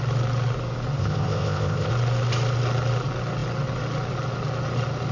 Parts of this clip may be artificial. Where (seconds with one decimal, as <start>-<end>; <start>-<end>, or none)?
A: 1.0-1.9